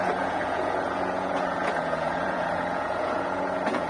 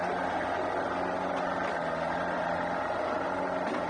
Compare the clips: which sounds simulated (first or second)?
first